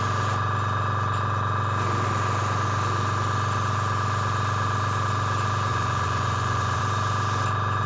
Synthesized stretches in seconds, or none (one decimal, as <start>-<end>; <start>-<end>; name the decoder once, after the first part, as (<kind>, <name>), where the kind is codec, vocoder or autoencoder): 5.7-6.8 (vocoder, Vocos)